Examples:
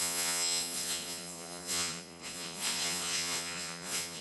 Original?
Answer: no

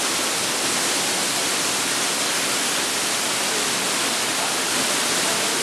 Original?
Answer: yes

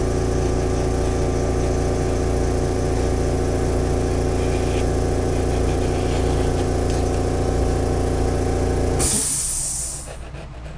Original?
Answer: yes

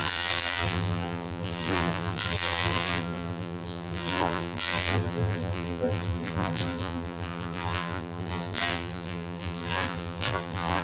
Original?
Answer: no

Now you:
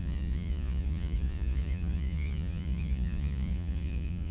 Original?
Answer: no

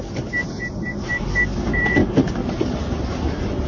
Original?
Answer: no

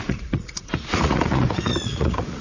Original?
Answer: no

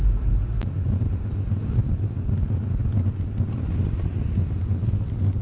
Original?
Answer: yes